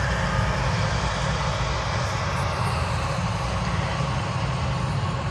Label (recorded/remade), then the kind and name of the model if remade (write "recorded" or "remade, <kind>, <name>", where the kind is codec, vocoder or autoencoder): recorded